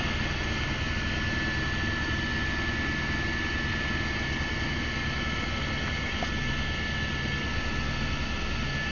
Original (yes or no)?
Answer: yes